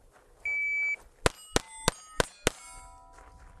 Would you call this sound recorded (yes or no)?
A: yes